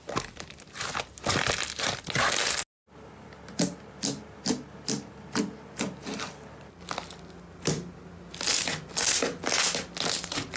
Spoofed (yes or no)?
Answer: no